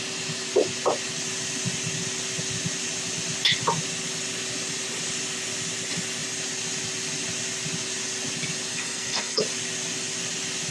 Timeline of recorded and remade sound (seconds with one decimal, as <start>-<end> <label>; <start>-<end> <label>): 0.0-8.7 recorded; 8.7-9.4 remade; 9.4-10.7 recorded